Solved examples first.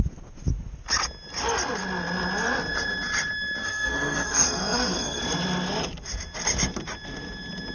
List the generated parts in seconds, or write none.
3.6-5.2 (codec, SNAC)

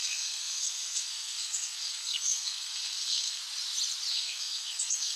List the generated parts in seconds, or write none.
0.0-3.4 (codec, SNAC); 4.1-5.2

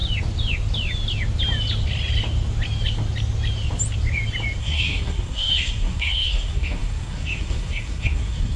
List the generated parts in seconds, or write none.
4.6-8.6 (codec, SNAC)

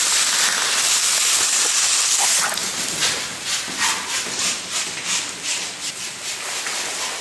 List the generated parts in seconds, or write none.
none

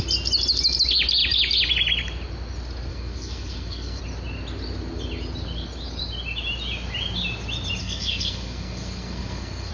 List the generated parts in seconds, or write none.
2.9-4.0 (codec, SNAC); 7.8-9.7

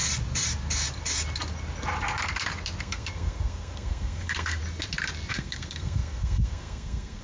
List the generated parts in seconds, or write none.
2.8-4.6 (codec, SNAC); 5.3-7.2

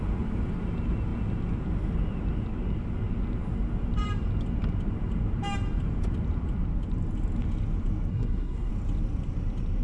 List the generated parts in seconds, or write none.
8.1-8.7 (codec, SNAC)

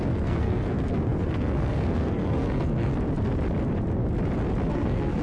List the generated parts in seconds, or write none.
0.0-2.9 (codec, SNAC); 4.7-5.2